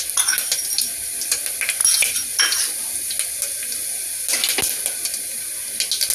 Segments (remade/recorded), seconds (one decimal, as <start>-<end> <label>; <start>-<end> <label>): 0.0-6.1 recorded